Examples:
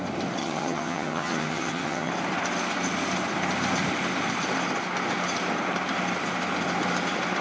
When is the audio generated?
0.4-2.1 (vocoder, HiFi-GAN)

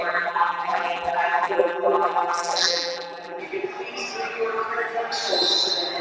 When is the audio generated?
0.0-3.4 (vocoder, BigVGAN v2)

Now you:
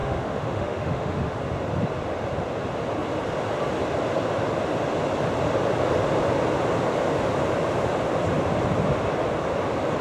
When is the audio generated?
0.0-1.4 (autoencoder, DAC-VAE)

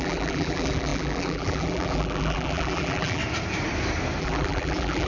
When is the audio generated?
0.0-3.2 (vocoder, BigVGAN v2); 4.2-5.1

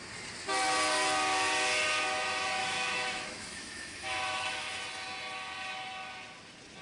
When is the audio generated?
2.6-4.8 (autoencoder, DAC-VAE)